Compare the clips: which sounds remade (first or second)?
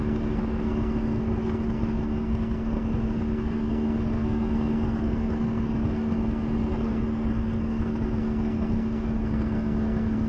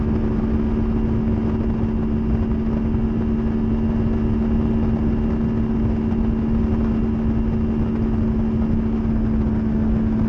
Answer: first